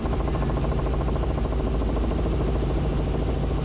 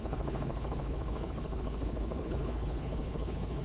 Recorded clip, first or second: first